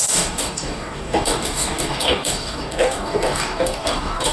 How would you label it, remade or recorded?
remade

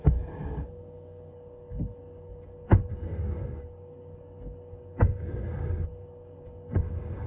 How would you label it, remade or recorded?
remade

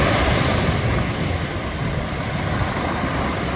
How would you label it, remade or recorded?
recorded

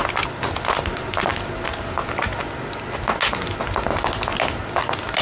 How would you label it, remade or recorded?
recorded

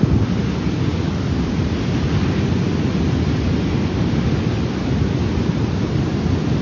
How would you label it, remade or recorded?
recorded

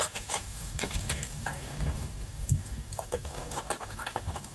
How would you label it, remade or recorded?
remade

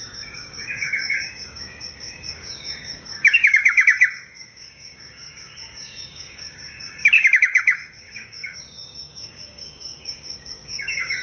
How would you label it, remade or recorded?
remade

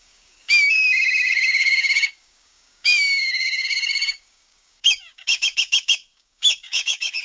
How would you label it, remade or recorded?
remade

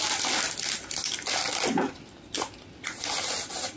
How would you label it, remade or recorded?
recorded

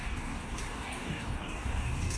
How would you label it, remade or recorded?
remade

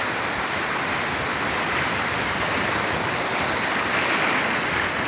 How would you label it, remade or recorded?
recorded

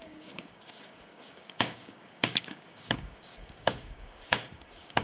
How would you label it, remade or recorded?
remade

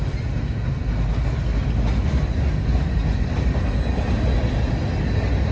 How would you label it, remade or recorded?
recorded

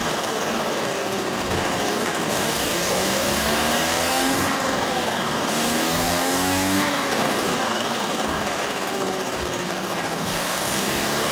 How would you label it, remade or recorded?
remade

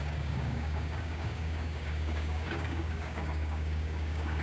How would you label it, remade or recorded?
remade